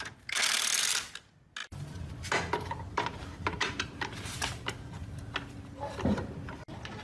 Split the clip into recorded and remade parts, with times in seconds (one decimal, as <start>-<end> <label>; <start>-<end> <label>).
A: 0.0-1.6 recorded; 1.6-5.3 remade; 5.3-7.0 recorded